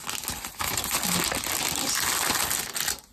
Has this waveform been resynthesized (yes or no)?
no